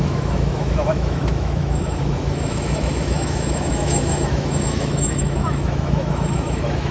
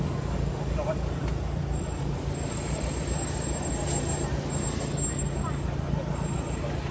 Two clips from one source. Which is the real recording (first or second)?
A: second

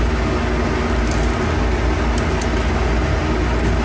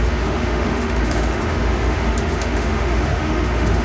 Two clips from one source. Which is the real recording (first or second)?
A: first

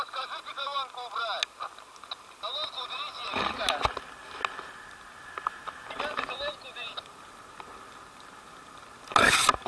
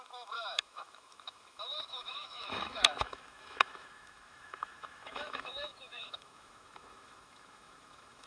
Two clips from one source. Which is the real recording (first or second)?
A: first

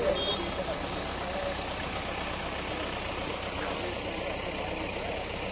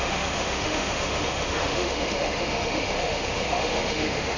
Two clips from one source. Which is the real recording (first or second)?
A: first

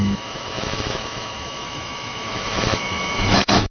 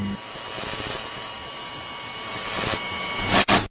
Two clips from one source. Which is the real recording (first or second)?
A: second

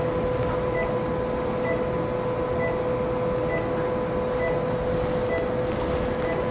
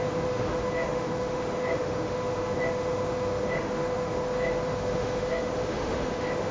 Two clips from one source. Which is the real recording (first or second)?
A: first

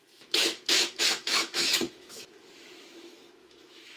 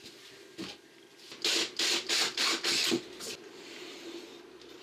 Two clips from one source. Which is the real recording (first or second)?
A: second